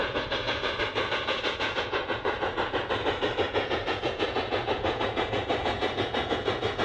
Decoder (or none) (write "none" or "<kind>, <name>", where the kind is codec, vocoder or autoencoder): vocoder, Vocos